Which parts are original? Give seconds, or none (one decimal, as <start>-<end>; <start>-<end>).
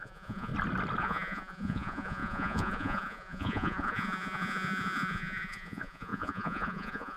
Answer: 0.5-1.0